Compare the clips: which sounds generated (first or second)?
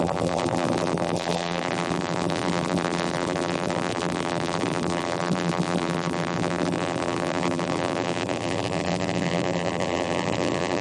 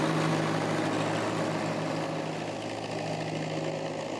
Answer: first